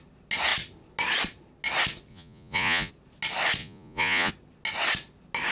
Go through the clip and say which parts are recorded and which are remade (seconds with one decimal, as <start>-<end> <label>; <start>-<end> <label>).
0.0-2.1 recorded; 2.1-2.9 remade; 2.9-3.6 recorded; 3.6-4.3 remade; 4.3-5.5 recorded

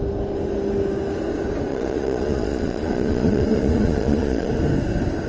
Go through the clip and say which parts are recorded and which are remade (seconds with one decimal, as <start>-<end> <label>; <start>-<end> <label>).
0.0-1.7 recorded; 1.7-4.5 remade; 4.5-5.3 recorded

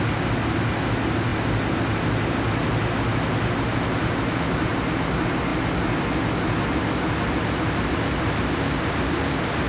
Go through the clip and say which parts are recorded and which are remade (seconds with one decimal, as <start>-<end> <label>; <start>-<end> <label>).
0.0-9.7 recorded

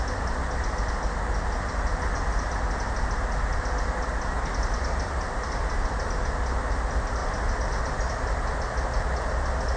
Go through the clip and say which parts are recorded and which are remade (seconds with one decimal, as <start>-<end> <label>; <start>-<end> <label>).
0.0-9.8 recorded

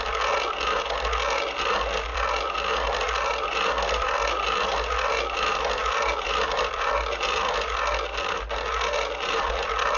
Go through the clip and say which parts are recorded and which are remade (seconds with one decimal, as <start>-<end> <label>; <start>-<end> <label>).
0.0-10.0 recorded

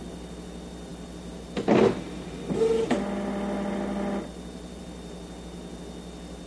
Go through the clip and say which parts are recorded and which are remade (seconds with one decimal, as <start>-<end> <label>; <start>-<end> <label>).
0.0-6.5 recorded

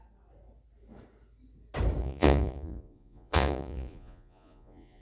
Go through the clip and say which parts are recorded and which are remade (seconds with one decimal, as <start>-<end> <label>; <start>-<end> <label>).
0.0-2.0 recorded; 2.0-5.0 remade